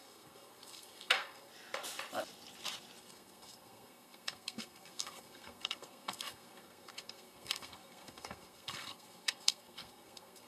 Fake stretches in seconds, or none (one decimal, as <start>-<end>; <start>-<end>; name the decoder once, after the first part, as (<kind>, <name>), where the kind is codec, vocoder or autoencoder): 0.0-1.5 (codec, SNAC); 3.0-10.5